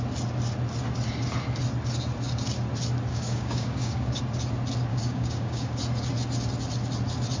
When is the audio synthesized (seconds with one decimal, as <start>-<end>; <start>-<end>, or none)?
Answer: 3.1-4.2; 4.9-5.8